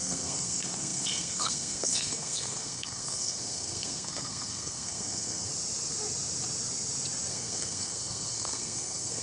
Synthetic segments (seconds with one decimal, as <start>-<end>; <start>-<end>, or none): 0.0-5.5; 7.3-9.2